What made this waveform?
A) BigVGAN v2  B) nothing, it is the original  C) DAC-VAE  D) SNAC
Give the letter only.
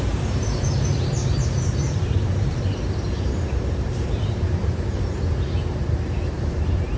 A